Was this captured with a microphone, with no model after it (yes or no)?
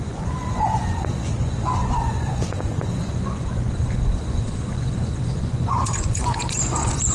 no